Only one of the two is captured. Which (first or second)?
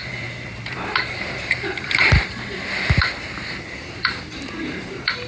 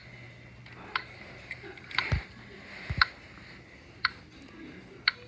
second